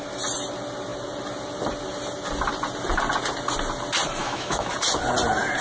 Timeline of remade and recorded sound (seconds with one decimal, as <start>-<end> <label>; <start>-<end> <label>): 0.0-4.2 recorded; 4.2-4.7 remade; 4.7-5.6 recorded